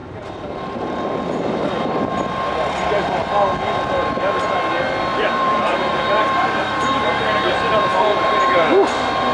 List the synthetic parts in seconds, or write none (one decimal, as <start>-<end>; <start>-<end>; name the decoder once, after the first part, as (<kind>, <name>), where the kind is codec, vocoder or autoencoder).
0.0-1.0 (vocoder, BigVGAN v2); 5.1-7.2; 7.9-8.4